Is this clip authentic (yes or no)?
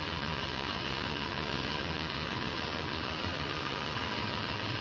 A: no